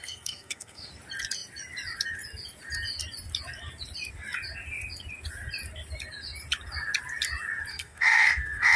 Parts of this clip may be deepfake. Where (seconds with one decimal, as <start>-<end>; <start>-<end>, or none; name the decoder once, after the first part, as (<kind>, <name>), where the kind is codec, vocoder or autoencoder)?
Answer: 0.0-0.9 (codec, SNAC); 7.7-8.8